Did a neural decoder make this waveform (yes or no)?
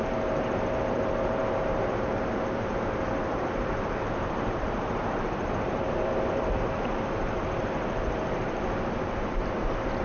yes